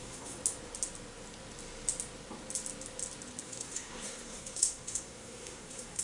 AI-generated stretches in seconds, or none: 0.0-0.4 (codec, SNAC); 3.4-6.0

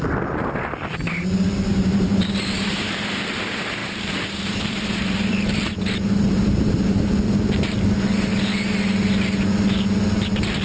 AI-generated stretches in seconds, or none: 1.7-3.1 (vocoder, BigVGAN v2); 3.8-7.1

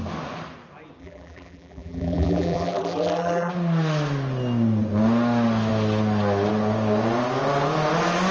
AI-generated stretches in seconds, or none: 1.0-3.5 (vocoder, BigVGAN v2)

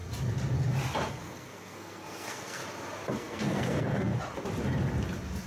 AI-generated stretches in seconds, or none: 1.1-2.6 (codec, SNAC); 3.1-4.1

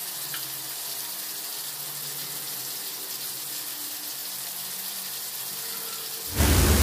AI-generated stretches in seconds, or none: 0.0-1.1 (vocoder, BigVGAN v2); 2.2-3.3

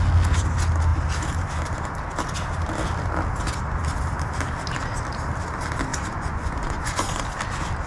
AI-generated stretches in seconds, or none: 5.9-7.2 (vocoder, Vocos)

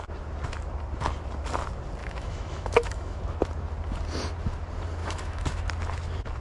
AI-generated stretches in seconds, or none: 2.0-3.2 (autoencoder, DAC-VAE); 5.0-5.6